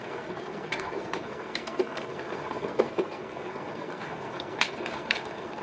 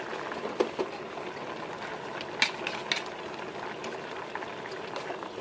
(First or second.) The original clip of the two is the second